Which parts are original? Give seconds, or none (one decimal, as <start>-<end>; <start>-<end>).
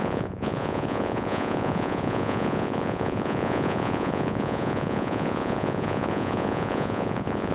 none